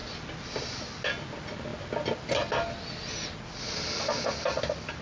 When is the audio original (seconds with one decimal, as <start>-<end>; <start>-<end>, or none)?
0.0-5.0